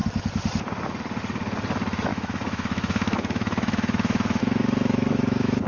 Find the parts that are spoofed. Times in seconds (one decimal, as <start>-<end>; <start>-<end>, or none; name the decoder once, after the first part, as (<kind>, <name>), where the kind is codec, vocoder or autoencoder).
2.1-5.7 (autoencoder, DAC-VAE)